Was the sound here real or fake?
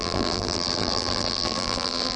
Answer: fake